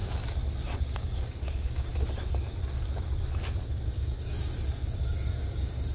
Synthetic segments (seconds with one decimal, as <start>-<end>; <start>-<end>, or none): 0.8-1.9; 3.7-5.9